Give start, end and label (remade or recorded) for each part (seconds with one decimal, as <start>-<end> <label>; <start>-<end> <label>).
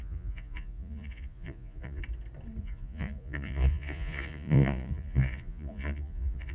0.0-2.0 remade; 2.0-2.6 recorded; 2.6-6.5 remade